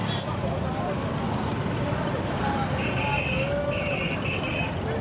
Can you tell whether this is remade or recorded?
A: recorded